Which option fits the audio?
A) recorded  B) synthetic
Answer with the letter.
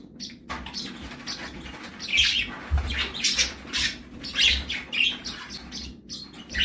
A